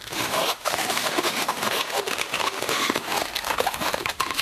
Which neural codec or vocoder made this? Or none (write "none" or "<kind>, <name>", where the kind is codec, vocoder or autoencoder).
autoencoder, DAC-VAE